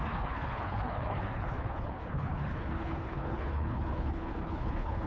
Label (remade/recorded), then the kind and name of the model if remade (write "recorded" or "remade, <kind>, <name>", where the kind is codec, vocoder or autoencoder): remade, codec, HILCodec